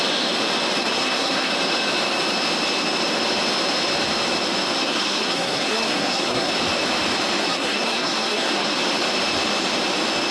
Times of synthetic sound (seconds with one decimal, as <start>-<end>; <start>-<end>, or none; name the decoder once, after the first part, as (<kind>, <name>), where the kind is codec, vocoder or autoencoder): 0.8-1.5 (codec, SNAC); 4.8-6.5; 7.4-8.8